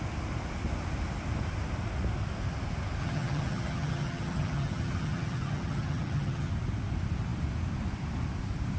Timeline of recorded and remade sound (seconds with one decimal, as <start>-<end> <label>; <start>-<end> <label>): 0.0-3.0 recorded; 3.0-6.5 remade; 6.5-8.8 recorded